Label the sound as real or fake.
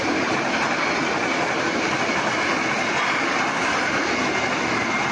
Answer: real